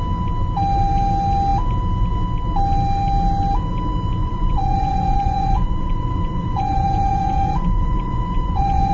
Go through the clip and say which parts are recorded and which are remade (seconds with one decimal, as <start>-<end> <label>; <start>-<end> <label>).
0.0-4.2 recorded; 4.2-8.9 remade